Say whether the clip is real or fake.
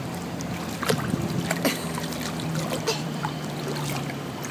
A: fake